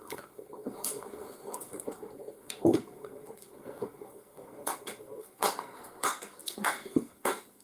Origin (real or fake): fake